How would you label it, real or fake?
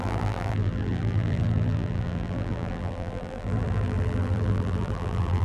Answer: fake